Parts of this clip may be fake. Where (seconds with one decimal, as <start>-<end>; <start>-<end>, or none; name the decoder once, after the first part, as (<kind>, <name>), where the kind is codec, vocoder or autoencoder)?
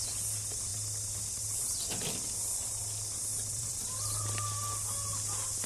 3.3-3.8 (vocoder, BigVGAN v2)